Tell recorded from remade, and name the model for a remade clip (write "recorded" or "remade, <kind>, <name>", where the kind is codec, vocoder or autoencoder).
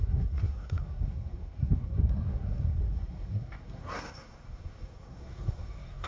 remade, codec, SNAC